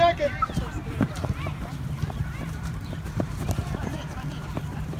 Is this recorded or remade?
remade